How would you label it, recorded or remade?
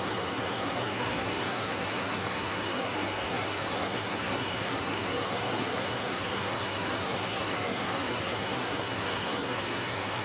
remade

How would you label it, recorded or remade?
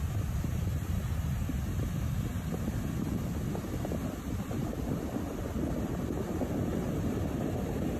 recorded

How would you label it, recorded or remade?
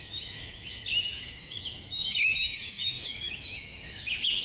remade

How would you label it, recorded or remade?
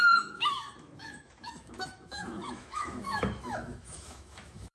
remade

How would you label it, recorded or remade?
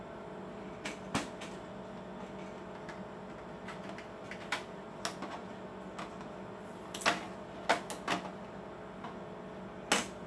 recorded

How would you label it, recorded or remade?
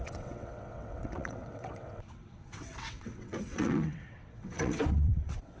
remade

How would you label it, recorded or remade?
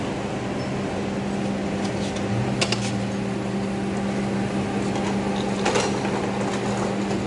recorded